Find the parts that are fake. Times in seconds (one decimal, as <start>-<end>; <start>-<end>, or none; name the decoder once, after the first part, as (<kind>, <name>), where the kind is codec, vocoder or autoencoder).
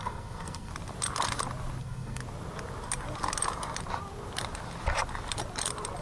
0.0-0.7 (codec, SNAC); 1.8-2.2